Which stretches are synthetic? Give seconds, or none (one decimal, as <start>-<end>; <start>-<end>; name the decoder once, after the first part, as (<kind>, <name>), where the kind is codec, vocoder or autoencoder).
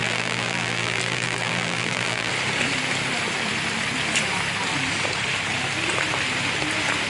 0.0-2.3 (vocoder, BigVGAN v2)